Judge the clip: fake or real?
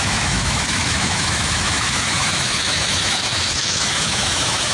fake